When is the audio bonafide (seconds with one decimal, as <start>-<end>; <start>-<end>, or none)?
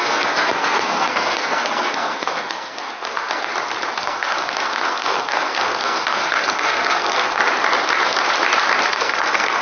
3.5-4.0; 7.4-8.9